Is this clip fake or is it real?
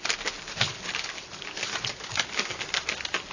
real